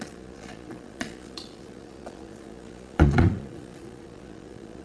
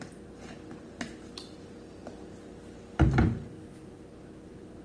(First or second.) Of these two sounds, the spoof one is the first